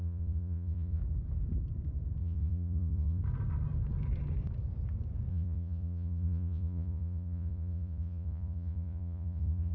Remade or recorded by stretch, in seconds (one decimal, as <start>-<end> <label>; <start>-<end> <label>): 0.0-1.0 remade; 1.0-2.2 recorded; 2.2-3.2 remade; 3.2-5.3 recorded; 5.3-9.7 remade